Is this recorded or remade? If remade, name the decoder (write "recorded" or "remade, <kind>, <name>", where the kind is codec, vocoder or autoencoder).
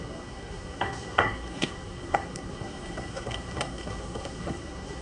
remade, codec, SNAC